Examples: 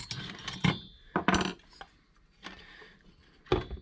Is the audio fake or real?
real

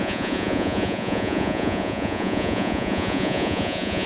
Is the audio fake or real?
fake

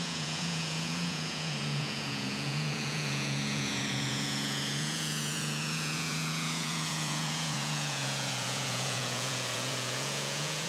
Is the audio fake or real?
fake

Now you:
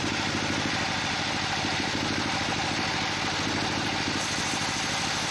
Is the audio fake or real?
real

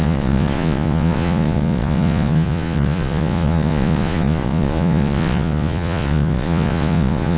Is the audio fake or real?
fake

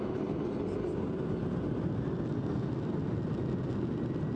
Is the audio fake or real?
real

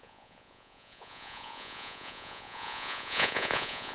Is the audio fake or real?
fake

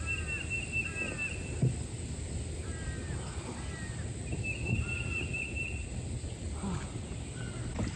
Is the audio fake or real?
real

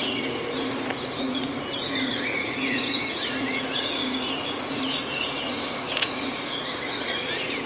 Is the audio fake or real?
fake